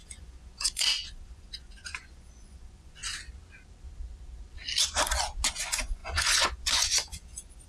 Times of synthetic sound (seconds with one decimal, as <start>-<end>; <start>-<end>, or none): 0.0-3.0; 5.6-7.7